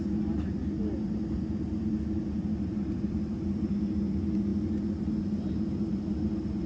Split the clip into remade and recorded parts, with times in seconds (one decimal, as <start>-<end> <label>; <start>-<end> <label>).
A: 0.0-6.7 recorded